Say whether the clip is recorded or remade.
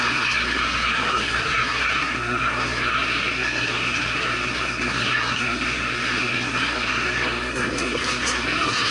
remade